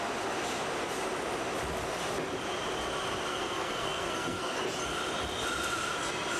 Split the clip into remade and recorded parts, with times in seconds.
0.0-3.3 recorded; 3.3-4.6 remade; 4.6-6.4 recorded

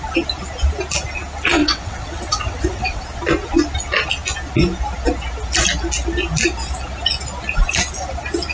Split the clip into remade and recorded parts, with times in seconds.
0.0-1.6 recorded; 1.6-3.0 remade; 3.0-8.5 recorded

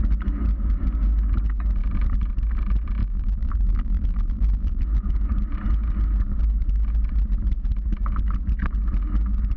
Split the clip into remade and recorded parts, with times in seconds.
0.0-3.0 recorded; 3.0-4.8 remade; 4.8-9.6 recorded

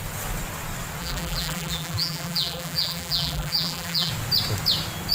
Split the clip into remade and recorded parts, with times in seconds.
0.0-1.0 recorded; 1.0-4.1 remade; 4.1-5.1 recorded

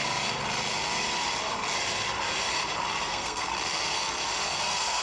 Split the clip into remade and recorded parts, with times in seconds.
0.0-3.0 recorded; 3.0-3.5 remade; 3.5-4.6 recorded; 4.6-5.0 remade

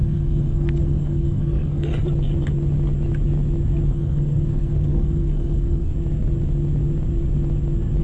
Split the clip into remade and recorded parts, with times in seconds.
0.0-1.9 remade; 1.9-3.9 recorded; 3.9-5.9 remade; 5.9-8.0 recorded